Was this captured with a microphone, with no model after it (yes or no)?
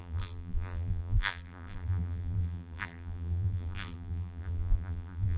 no